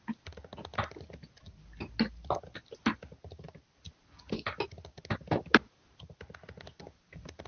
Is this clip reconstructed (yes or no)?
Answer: no